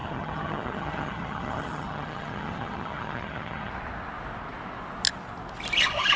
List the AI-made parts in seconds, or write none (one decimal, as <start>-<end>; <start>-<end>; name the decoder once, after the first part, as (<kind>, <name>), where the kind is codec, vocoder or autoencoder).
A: 0.0-3.7 (vocoder, HiFi-GAN)